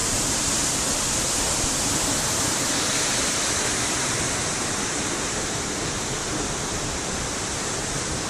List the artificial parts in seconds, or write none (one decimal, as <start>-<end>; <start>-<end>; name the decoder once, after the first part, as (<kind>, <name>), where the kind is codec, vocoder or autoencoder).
1.4-8.3 (vocoder, BigVGAN v2)